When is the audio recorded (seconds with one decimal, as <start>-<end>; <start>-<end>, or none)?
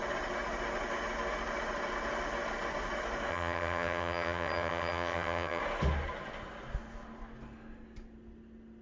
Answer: 0.0-3.3; 5.6-8.8